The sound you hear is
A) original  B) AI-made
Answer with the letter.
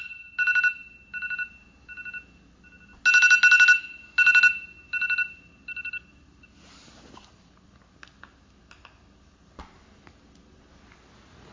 A